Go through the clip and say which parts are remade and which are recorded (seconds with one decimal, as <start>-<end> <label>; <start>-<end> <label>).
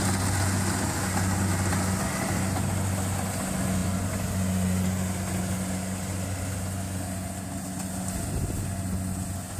0.0-9.6 recorded